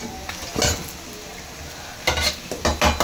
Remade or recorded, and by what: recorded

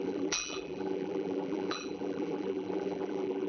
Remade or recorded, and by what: remade, vocoder, BigVGAN v2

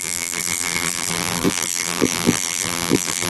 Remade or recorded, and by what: remade, vocoder, BigVGAN v2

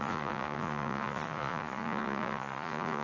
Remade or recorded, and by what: remade, vocoder, Vocos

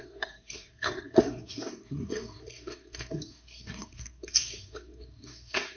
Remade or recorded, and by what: remade, codec, SNAC